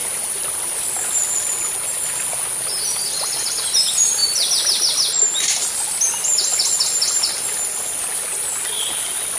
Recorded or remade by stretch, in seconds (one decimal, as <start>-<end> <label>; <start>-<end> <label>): 0.0-9.4 recorded